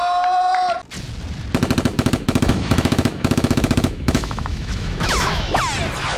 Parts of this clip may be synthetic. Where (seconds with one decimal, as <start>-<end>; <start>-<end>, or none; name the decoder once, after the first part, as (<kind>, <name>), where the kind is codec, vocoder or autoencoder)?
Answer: 1.9-5.6 (autoencoder, DAC-VAE)